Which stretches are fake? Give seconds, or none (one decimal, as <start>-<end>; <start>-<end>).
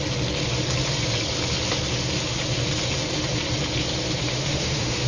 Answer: 4.3-5.1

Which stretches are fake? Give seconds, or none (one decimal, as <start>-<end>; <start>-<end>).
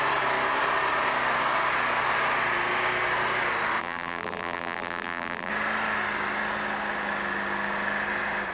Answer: 3.8-5.5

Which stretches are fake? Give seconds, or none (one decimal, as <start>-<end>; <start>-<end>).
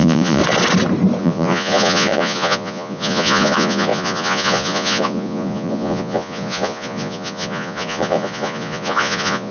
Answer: 0.0-0.4; 1.2-9.5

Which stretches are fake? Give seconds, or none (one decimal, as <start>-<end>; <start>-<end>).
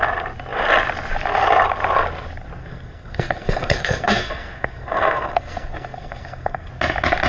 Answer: 2.6-6.7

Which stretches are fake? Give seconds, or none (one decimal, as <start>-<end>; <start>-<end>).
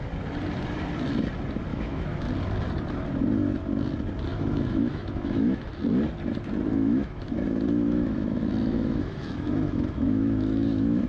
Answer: 1.7-2.3; 4.3-5.8; 6.7-11.1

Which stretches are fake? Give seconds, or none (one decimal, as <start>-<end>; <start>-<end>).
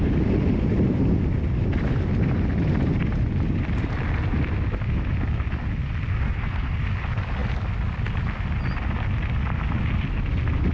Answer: 6.1-6.8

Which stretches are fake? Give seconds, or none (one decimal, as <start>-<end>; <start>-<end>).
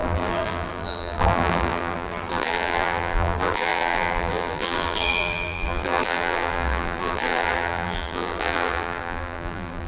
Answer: 0.0-9.9